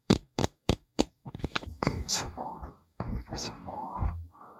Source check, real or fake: fake